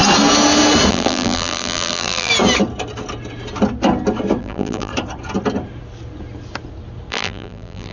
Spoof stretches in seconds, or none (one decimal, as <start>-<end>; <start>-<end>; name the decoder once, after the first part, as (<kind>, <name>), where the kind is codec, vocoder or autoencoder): 0.9-2.3 (vocoder, BigVGAN v2); 4.4-4.9; 7.1-7.9